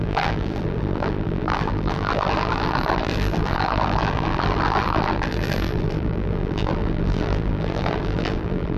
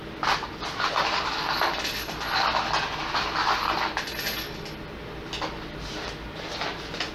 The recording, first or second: second